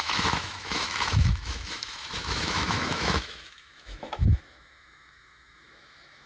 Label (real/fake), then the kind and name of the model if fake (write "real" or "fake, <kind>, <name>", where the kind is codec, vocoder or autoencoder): fake, autoencoder, DAC-VAE